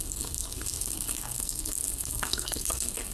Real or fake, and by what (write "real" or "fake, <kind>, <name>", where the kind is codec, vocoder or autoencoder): fake, codec, SNAC